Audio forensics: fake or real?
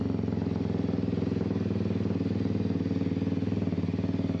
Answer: real